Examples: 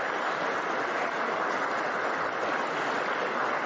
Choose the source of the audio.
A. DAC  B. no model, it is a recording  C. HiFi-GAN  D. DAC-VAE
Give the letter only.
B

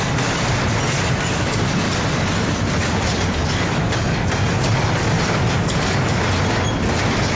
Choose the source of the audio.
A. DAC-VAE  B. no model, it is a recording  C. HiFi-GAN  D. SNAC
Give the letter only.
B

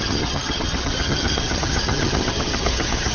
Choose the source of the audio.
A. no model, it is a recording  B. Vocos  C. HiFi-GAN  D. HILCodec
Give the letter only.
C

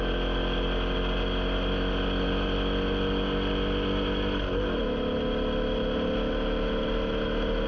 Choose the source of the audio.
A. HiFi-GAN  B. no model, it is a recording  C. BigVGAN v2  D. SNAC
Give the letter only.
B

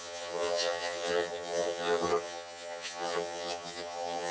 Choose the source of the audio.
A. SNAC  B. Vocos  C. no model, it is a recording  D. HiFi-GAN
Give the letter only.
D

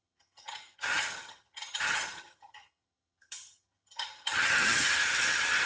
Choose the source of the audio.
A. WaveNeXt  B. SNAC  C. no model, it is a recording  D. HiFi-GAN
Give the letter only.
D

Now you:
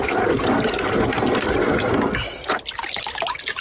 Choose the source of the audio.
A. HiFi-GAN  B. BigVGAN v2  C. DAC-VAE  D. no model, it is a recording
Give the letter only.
D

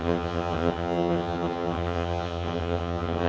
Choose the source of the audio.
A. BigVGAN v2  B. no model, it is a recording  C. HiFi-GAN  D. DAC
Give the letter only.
C